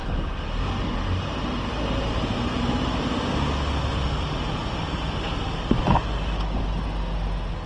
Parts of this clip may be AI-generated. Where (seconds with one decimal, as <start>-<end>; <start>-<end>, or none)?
none

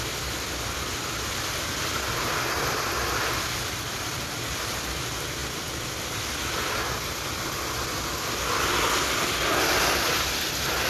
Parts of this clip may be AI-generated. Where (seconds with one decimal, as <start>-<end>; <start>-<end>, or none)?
none

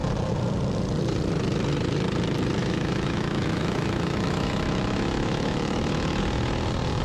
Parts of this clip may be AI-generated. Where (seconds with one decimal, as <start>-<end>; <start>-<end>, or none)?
2.6-6.2

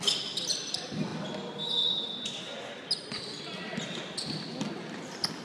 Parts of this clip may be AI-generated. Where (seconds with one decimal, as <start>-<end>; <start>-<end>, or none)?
none

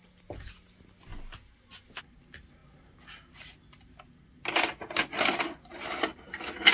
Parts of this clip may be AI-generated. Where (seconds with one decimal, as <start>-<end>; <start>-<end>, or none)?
none

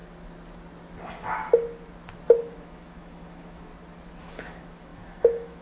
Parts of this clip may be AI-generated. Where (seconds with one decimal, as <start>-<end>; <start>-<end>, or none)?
2.4-3.7; 4.2-5.6